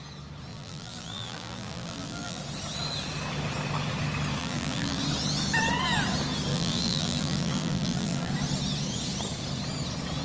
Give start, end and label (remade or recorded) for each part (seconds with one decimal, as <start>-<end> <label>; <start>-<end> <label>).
0.0-0.5 recorded; 0.5-2.4 remade; 2.4-4.4 recorded; 4.4-5.0 remade; 5.0-6.5 recorded; 6.5-8.3 remade; 8.3-10.2 recorded